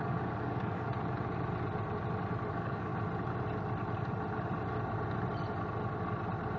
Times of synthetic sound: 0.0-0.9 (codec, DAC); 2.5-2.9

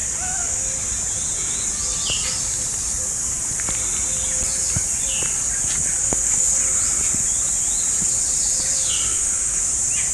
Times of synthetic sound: 6.0-6.6 (codec, DAC); 9.1-9.6

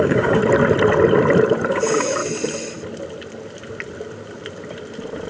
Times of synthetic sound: 0.0-0.4 (codec, DAC); 1.7-2.2

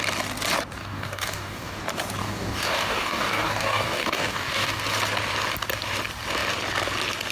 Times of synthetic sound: 0.8-1.8 (codec, DAC); 2.2-4.8

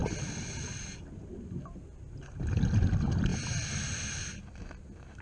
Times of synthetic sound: none

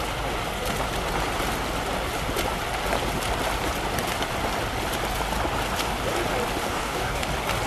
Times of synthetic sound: 6.6-7.2 (codec, DAC)

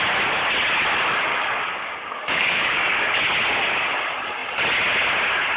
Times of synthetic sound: 1.3-3.2 (codec, DAC)